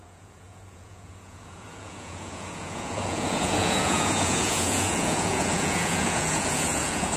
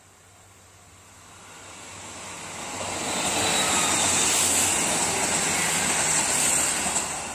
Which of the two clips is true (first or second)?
second